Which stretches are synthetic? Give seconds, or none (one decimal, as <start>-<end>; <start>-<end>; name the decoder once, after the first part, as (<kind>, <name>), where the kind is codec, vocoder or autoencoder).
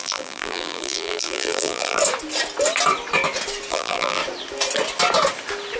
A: 0.0-2.0 (vocoder, BigVGAN v2); 3.7-4.2